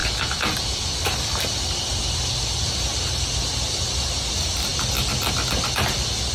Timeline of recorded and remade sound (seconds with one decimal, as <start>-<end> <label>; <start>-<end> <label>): 0.0-2.9 recorded; 2.9-3.4 remade; 3.4-6.3 recorded